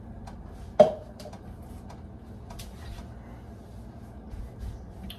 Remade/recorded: recorded